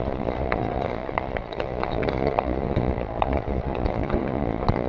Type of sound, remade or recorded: remade